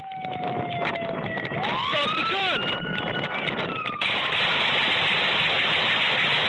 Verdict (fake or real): real